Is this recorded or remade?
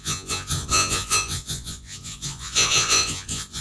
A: remade